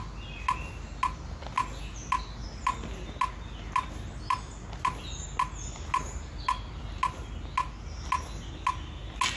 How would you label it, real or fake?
real